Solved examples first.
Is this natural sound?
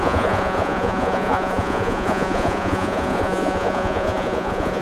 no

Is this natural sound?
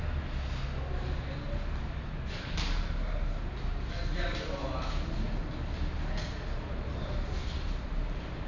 yes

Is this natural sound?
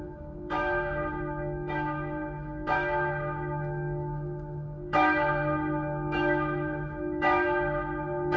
no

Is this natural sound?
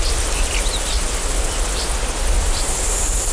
no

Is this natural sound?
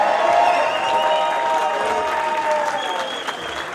yes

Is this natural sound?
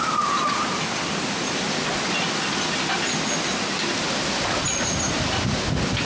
yes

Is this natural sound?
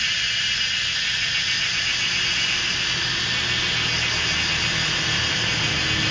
yes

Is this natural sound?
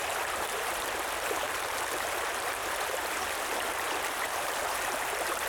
no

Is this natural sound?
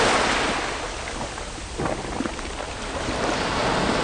yes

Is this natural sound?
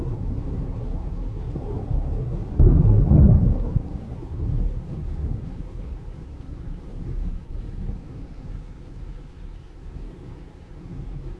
no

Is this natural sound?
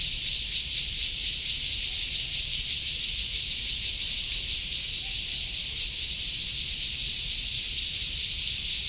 no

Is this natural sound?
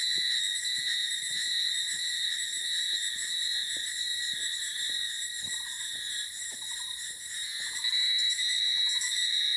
yes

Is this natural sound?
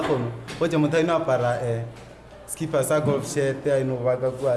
yes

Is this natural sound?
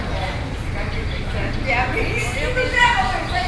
yes